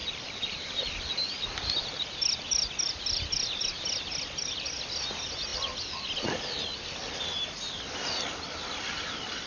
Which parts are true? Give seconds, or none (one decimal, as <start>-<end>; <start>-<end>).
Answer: 3.7-9.5